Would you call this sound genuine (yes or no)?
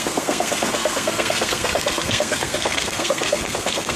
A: no